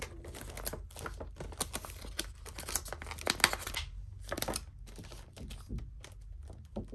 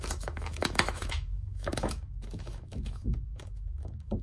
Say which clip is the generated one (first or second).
second